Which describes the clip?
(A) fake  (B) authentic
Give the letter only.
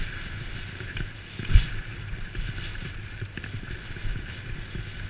B